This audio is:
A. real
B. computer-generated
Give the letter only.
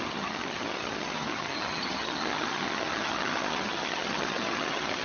B